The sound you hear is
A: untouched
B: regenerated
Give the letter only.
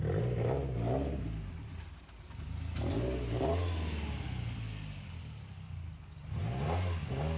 A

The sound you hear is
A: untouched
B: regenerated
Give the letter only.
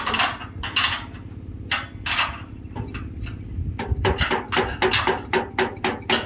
A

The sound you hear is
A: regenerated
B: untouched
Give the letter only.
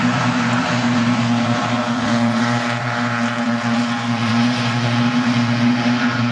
A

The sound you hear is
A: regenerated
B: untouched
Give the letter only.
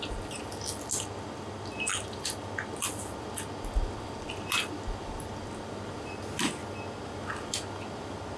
B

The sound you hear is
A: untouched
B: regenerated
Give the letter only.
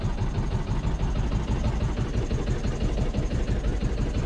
A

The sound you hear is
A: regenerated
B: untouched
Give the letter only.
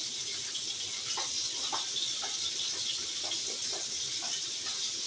B